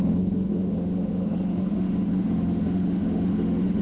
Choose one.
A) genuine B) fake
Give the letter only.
B